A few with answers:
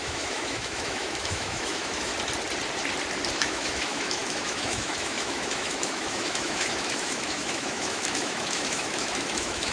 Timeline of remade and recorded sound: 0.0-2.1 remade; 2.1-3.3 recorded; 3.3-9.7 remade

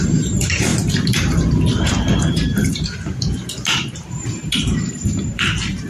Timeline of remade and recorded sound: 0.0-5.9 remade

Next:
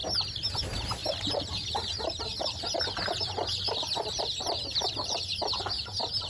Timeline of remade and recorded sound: 0.0-0.6 recorded; 0.6-6.3 remade

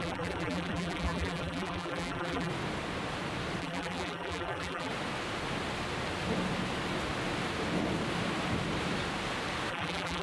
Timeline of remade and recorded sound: 0.0-2.5 remade; 2.5-3.6 recorded; 3.6-4.9 remade; 4.9-9.7 recorded; 9.7-10.2 remade

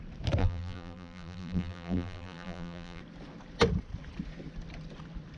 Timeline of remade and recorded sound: 0.0-0.4 recorded; 0.4-3.0 remade; 3.0-5.4 recorded

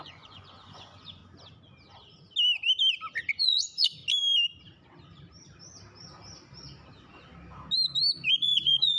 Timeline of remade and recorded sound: 0.0-1.2 remade; 1.2-3.3 recorded; 3.3-4.0 remade; 4.0-8.3 recorded; 8.3-9.0 remade

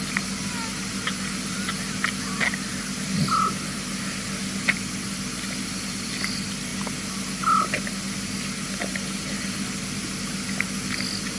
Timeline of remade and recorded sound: 0.0-11.4 recorded